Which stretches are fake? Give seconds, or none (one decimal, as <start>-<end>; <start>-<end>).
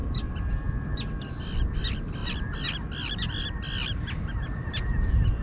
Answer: none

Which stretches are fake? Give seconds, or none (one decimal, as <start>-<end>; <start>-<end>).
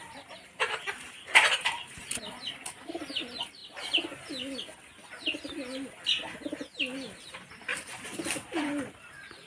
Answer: 0.0-3.6; 7.3-7.7; 8.6-9.5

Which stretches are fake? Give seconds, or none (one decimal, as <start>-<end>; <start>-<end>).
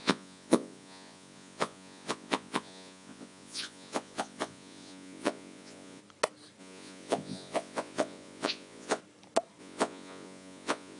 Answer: 0.0-6.0; 6.6-9.0; 9.6-11.0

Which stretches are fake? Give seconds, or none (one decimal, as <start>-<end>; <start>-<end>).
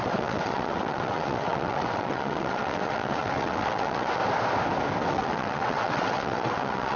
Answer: 0.0-4.2; 5.1-7.0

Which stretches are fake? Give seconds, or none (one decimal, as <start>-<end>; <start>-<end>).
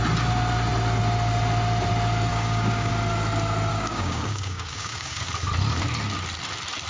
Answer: 2.3-2.9; 3.7-5.3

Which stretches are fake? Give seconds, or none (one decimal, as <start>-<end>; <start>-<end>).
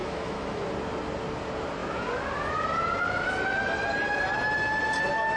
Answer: 0.0-0.6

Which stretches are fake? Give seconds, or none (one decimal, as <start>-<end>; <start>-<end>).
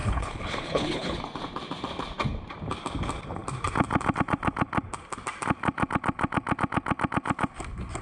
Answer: 0.0-1.2